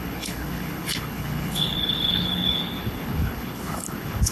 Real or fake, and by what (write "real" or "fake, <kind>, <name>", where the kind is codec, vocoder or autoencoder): fake, codec, HILCodec